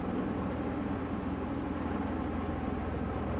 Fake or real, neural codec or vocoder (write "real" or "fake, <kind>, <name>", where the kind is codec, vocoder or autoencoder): real